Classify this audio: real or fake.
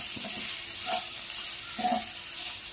real